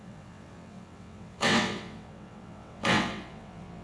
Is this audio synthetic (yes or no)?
yes